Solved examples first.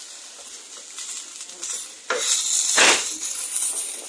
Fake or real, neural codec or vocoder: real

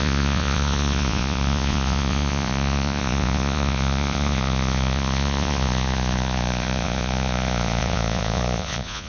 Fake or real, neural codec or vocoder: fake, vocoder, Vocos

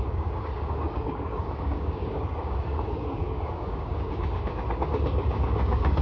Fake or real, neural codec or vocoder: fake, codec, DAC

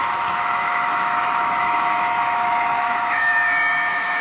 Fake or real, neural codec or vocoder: fake, autoencoder, DAC-VAE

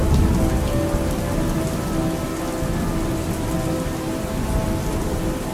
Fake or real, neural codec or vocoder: real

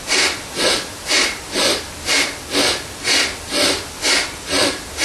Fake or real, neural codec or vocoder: fake, vocoder, BigVGAN v2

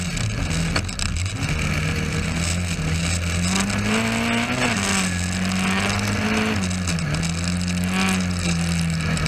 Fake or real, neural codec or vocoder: real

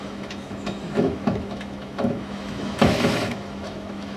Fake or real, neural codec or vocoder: fake, autoencoder, DAC-VAE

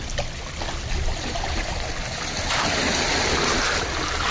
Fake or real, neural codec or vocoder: real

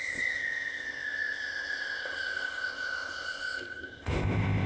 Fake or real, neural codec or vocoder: fake, codec, ZipCodec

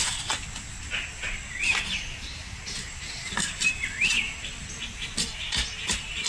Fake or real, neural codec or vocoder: real